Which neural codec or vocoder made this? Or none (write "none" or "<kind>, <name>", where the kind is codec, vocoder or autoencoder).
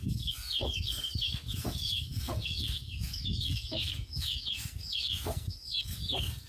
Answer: codec, SNAC